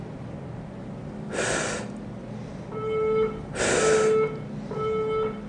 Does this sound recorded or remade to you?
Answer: recorded